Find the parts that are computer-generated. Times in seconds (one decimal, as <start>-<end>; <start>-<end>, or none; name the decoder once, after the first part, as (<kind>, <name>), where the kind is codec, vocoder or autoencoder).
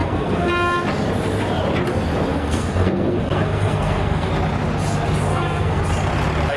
0.0-0.5 (codec, SNAC); 2.3-4.3; 5.3-5.8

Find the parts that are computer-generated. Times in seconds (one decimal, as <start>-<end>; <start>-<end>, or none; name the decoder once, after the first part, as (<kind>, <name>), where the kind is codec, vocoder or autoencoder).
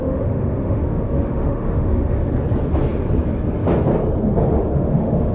0.0-2.3 (autoencoder, DAC-VAE); 4.5-5.3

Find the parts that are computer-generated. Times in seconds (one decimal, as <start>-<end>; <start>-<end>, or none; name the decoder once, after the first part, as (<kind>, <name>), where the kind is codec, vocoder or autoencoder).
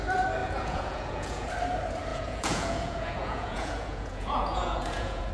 0.4-1.5 (vocoder, Vocos); 2.1-5.3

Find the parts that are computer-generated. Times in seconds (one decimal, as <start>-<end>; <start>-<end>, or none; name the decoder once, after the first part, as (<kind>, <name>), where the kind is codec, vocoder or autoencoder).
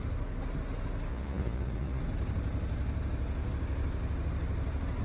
1.1-2.0 (vocoder, Vocos)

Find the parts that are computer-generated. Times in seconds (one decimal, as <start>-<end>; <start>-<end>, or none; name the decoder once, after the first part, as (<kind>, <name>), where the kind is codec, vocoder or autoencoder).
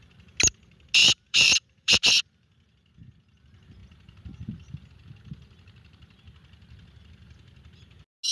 1.0-2.1 (vocoder, BigVGAN v2)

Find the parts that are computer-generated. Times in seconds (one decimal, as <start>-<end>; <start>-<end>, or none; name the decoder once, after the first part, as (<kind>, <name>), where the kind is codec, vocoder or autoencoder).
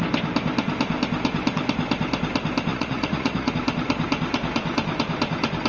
2.7-3.5 (vocoder, Vocos)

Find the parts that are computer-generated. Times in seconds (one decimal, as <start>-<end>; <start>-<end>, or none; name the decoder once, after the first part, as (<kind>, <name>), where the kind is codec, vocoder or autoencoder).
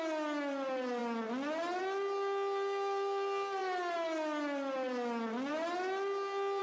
none